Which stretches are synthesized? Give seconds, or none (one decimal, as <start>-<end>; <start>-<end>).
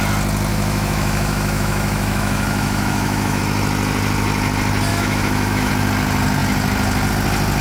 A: 0.5-3.4; 4.9-5.7